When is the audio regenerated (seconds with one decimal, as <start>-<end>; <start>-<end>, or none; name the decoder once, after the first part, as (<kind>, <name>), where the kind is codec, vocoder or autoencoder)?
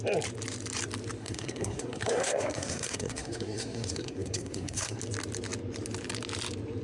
1.2-5.0 (codec, SNAC)